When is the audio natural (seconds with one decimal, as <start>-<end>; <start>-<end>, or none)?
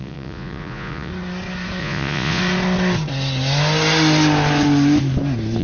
1.1-1.8; 2.4-5.6